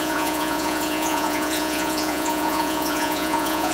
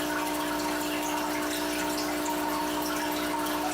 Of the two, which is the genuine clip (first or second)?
second